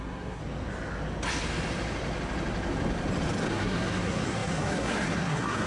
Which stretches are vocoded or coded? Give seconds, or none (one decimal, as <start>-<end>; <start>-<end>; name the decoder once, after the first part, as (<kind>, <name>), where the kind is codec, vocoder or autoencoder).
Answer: 0.0-0.4 (codec, SNAC); 3.5-5.7